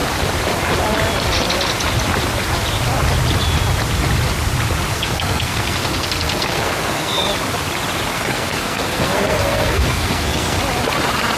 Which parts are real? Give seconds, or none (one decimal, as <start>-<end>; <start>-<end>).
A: 0.0-4.9; 7.3-8.1; 10.6-11.4